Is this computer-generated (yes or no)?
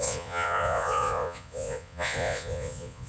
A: yes